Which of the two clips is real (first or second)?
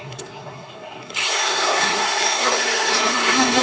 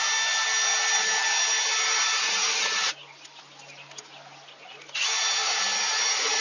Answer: second